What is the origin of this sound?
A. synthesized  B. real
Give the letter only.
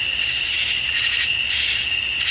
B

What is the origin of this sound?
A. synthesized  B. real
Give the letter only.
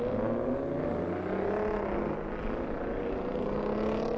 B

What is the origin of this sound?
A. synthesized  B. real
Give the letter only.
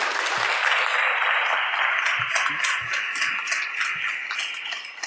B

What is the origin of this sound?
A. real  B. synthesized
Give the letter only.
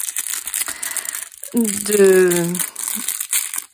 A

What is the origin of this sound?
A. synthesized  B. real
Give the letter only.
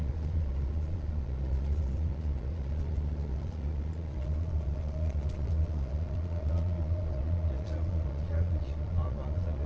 A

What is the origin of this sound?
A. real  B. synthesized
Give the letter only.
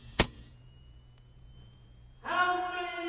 B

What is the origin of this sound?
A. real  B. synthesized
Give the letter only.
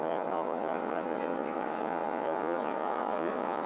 B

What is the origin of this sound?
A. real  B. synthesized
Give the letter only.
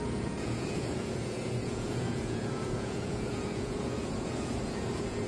B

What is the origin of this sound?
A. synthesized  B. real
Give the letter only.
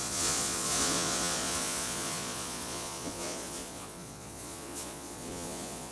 A